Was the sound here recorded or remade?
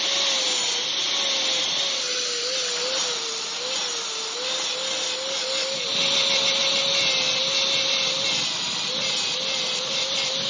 recorded